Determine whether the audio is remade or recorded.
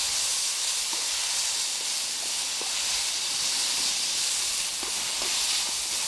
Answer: recorded